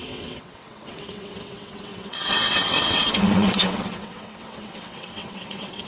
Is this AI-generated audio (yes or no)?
yes